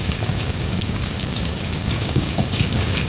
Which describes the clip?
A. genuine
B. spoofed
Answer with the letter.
B